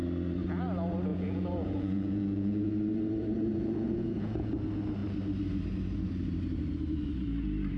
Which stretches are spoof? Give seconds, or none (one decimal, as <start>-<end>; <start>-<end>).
1.1-2.7; 3.2-4.5